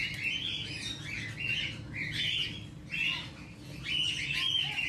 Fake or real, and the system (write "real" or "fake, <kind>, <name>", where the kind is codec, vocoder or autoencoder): real